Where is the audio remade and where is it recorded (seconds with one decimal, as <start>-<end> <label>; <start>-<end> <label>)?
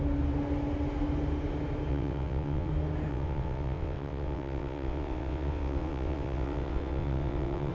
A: 0.0-1.9 recorded; 1.9-2.7 remade; 2.7-3.1 recorded; 3.1-7.7 remade